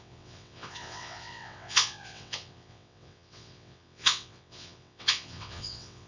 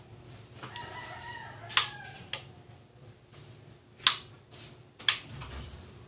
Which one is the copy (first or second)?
first